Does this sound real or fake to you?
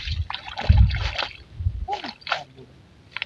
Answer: real